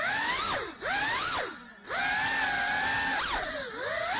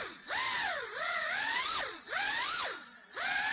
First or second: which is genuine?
first